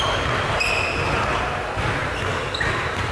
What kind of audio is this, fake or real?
real